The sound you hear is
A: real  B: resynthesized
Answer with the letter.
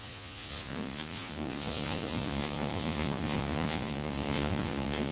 B